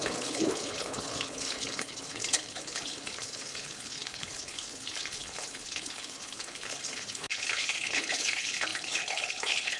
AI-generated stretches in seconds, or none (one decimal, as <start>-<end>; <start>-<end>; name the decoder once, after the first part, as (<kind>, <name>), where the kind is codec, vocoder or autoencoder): 0.0-9.8 (codec, HILCodec)